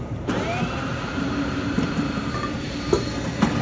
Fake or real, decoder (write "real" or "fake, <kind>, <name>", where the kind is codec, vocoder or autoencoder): fake, vocoder, BigVGAN v2